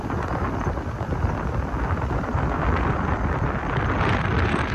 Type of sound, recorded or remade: recorded